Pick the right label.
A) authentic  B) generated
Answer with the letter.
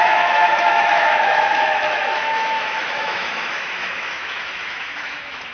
B